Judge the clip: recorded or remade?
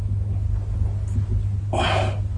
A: recorded